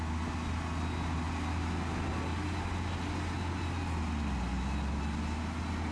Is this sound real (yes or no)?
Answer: yes